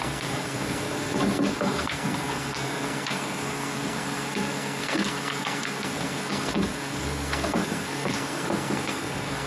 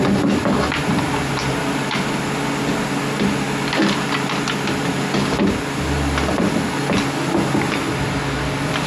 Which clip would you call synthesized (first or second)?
first